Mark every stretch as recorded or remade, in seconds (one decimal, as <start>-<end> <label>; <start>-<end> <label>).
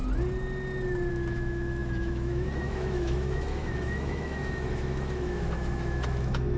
0.0-1.1 recorded; 1.1-6.6 remade